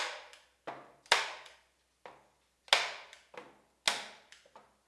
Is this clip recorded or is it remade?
recorded